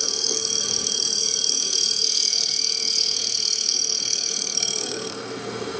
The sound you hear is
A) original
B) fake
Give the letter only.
B